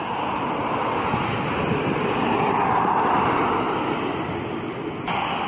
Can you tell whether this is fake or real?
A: real